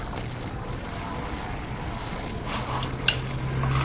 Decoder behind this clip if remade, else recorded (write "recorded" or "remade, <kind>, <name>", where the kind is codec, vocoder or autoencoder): recorded